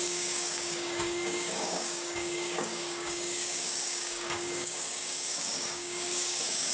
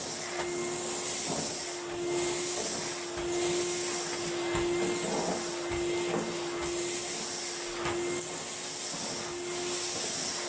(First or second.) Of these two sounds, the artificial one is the first